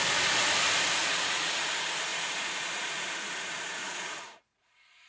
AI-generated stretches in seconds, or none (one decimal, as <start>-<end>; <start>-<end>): 1.0-1.7; 2.1-5.1